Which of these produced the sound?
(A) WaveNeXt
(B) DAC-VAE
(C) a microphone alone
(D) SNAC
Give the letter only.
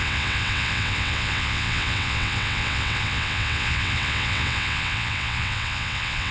A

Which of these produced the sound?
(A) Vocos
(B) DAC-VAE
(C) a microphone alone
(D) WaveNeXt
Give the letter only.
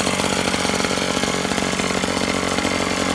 C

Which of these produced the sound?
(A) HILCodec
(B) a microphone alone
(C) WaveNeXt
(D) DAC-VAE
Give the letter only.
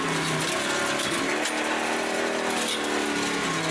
B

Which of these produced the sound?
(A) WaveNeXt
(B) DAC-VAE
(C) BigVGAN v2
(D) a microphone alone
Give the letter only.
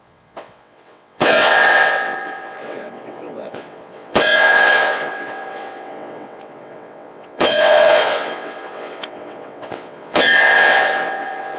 A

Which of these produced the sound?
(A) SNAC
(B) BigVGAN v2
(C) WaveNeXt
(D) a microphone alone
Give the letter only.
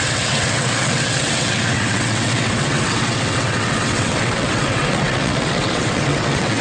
C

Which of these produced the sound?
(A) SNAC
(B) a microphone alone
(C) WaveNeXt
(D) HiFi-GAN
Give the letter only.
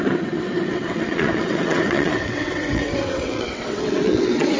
C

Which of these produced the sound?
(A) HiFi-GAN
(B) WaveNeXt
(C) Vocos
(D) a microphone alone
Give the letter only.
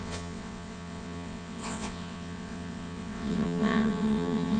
B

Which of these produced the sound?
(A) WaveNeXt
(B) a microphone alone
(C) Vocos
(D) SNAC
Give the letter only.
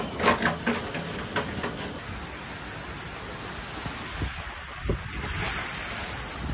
B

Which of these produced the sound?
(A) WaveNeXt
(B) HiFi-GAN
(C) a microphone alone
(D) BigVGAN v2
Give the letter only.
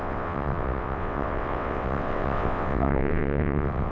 A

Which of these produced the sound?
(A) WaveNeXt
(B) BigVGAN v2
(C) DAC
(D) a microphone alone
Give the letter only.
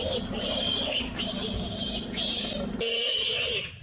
D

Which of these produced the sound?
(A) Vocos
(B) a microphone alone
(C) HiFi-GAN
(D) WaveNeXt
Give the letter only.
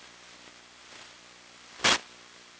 B